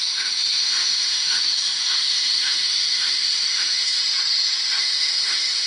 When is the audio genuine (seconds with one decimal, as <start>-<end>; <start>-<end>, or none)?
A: 4.0-4.8